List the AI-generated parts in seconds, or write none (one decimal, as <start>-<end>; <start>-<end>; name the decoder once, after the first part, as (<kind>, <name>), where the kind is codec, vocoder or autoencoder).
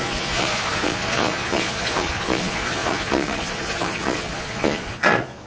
0.0-5.5 (vocoder, Vocos)